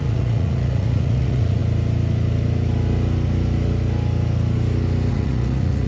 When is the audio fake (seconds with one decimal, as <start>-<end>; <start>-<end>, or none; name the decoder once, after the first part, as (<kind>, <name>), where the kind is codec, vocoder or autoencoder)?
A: 0.0-1.6 (vocoder, Vocos); 5.1-5.9